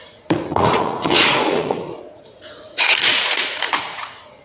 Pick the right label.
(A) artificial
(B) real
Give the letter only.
A